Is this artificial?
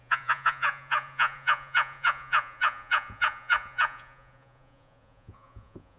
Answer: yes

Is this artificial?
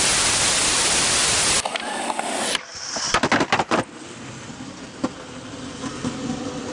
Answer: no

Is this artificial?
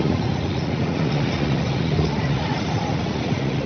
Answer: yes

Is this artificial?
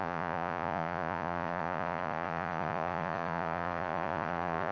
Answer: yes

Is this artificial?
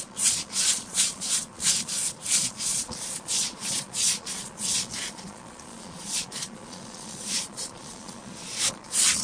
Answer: yes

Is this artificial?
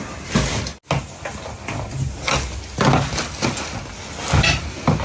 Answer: no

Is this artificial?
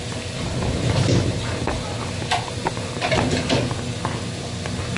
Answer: no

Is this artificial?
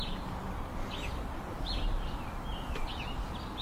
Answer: no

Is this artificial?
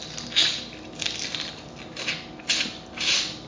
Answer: no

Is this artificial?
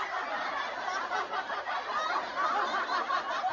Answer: no